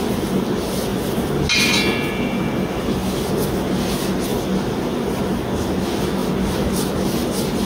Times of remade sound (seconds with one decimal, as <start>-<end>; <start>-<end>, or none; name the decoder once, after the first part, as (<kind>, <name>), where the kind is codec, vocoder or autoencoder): none